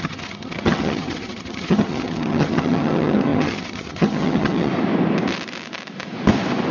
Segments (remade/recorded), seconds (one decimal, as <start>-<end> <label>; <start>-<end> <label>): 0.0-4.7 remade; 4.7-6.7 recorded